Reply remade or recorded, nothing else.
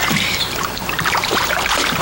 remade